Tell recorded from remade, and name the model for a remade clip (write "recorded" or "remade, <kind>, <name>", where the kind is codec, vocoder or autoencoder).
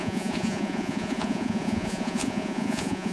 remade, vocoder, Vocos